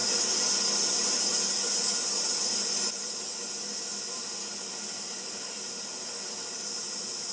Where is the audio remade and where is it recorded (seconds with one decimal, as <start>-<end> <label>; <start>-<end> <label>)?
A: 0.0-7.3 recorded

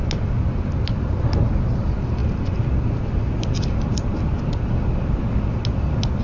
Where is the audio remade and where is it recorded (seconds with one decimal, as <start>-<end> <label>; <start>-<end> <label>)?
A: 0.0-2.2 recorded; 2.2-4.3 remade; 4.3-6.2 recorded

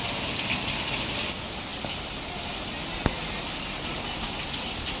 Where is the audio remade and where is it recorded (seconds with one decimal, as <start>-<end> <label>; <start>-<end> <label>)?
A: 0.0-5.0 recorded

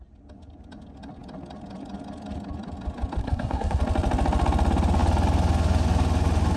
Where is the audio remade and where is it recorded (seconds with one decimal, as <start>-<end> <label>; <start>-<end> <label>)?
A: 0.0-3.2 recorded; 3.2-3.8 remade; 3.8-6.6 recorded